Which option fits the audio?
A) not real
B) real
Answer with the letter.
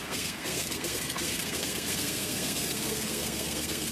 A